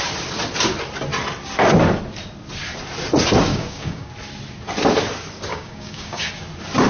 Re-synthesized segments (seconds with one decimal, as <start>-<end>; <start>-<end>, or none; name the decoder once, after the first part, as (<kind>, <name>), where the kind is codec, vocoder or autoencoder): 3.5-4.1 (codec, DAC); 5.5-6.3